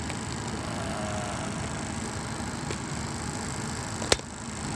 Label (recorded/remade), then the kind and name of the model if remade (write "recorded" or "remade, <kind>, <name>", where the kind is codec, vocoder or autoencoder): recorded